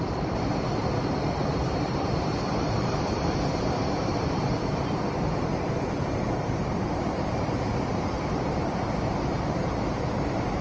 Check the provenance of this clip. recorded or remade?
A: remade